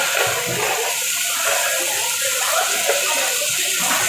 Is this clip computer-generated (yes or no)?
no